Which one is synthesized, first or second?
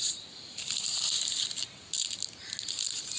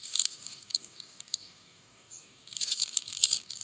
second